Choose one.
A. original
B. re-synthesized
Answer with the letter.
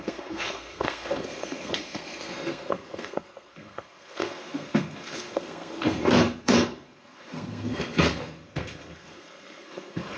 B